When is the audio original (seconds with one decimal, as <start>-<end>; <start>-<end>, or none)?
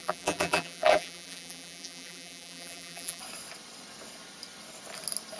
3.2-5.4